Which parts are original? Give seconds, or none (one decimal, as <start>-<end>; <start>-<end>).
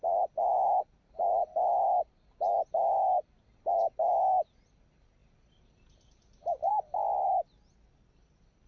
0.0-8.7